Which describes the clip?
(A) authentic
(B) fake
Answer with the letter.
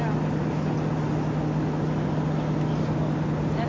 A